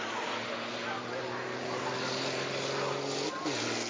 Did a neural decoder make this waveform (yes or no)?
no